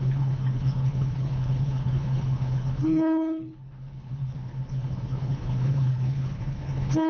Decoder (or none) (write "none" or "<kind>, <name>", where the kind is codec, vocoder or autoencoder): codec, HILCodec